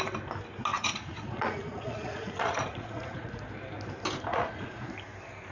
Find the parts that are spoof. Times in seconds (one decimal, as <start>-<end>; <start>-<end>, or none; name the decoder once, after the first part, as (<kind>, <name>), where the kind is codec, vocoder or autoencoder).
0.7-3.4 (vocoder, Vocos); 4.3-4.9